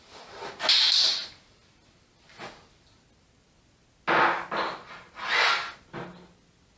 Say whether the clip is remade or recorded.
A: recorded